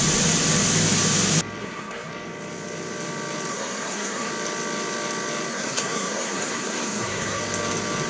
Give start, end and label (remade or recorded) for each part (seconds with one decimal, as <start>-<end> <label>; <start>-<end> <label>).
0.0-1.6 recorded; 1.6-2.1 remade; 2.1-3.5 recorded; 3.5-4.3 remade; 4.3-5.5 recorded; 5.5-7.4 remade; 7.4-8.1 recorded